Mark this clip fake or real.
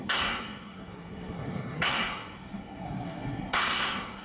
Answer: fake